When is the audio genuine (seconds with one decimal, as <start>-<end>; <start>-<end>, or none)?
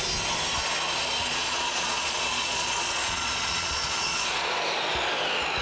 0.0-1.2; 4.5-5.6